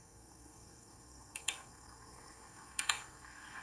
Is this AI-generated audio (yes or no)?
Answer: yes